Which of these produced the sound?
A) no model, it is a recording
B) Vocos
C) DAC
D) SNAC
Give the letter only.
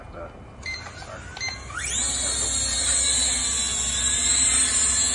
A